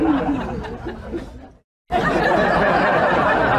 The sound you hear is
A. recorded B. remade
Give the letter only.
A